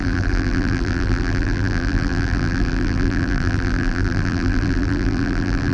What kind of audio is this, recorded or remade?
remade